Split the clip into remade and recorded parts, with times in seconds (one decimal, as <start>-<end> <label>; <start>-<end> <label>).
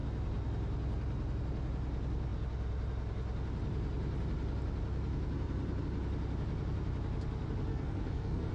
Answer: 0.0-7.7 recorded; 7.7-8.5 remade